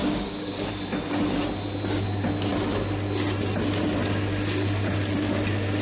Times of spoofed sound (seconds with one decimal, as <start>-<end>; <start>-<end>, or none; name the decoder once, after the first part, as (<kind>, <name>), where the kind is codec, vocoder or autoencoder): 0.0-0.7 (codec, DAC)